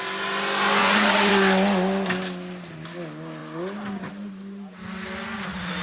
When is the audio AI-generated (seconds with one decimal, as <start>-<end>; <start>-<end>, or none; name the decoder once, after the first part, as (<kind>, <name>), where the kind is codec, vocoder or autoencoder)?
0.8-1.3 (vocoder, Vocos)